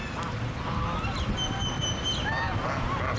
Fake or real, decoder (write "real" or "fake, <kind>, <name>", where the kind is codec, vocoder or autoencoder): real